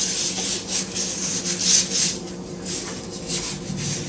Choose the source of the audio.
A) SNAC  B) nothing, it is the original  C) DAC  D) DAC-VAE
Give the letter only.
B